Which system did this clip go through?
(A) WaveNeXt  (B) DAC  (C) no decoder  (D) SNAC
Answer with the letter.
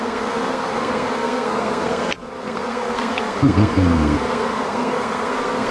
D